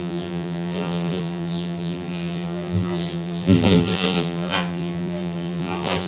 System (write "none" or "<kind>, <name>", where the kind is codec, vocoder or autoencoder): vocoder, BigVGAN v2